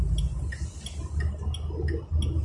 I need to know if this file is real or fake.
real